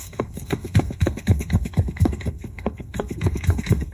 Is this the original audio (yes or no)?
no